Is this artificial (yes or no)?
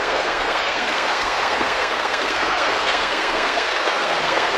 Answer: yes